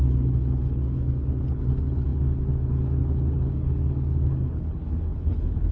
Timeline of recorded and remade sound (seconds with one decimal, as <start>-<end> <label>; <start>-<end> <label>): 0.0-5.7 remade